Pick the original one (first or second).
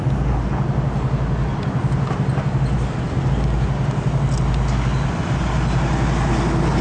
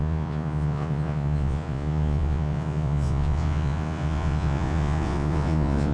first